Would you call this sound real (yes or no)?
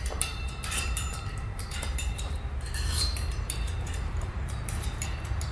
no